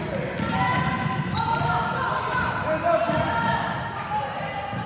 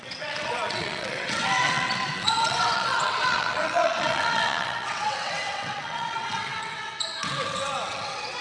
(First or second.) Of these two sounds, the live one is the first